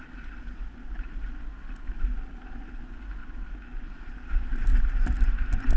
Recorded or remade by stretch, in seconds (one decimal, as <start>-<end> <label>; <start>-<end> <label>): 0.0-3.2 recorded; 3.2-4.3 remade; 4.3-5.8 recorded